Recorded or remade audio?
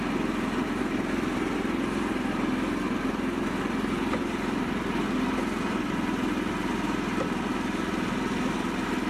recorded